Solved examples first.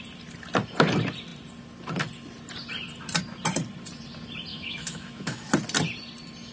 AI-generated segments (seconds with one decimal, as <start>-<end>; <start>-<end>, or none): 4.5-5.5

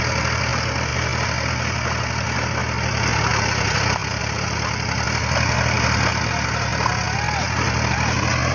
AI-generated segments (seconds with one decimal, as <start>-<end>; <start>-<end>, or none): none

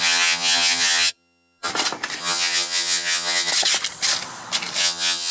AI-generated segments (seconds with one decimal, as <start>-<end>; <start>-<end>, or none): 0.0-1.7; 2.2-3.5; 4.8-5.3